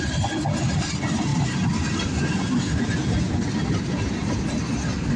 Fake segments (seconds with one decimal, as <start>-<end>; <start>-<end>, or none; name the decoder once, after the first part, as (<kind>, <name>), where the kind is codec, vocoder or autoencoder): none